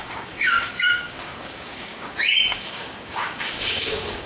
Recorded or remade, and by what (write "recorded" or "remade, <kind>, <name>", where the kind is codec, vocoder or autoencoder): remade, codec, DAC